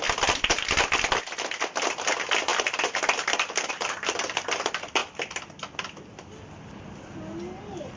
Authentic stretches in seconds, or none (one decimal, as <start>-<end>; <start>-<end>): 0.0-8.0